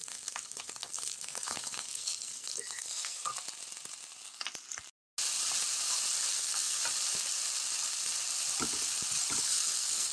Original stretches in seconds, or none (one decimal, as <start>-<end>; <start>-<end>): 3.3-6.3; 6.8-9.4